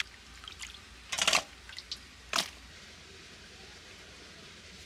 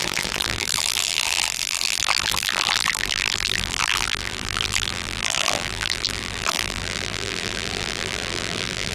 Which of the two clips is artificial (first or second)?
second